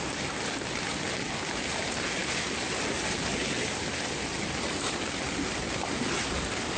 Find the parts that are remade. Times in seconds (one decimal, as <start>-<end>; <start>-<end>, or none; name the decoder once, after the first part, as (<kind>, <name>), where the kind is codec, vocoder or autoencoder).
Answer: none